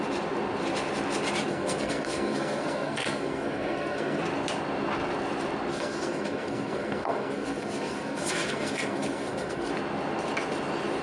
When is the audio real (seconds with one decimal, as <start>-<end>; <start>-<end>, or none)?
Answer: 0.0-1.5; 4.2-5.7; 9.7-11.0